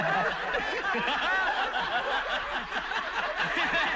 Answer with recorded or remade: recorded